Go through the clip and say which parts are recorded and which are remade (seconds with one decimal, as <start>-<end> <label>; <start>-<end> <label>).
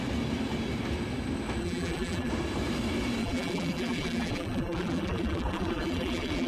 0.0-1.6 recorded; 1.6-2.3 remade; 2.3-3.2 recorded; 3.2-6.5 remade